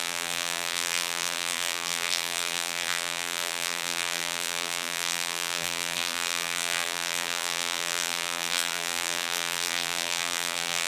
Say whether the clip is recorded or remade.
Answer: remade